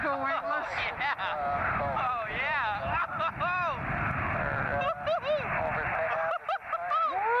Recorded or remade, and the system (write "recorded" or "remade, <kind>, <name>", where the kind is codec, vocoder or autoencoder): recorded